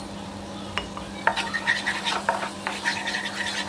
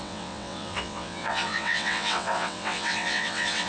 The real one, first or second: first